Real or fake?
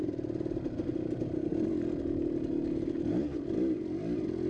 real